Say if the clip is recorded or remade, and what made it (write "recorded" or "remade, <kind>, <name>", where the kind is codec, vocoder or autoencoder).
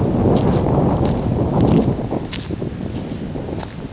recorded